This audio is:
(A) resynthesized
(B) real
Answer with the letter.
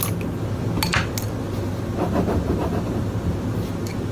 B